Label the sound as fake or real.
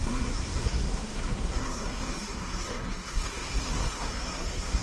fake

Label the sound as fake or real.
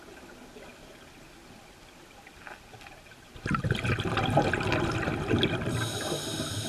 real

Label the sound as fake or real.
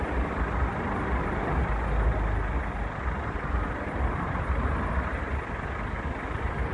real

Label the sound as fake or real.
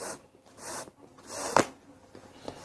real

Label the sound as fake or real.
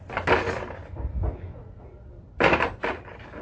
real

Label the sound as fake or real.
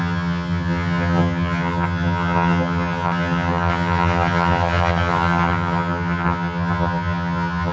fake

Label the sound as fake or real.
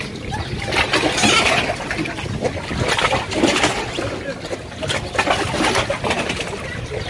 real